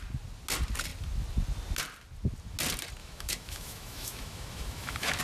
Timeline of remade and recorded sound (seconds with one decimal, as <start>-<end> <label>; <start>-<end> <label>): 0.0-3.0 recorded; 3.0-5.2 remade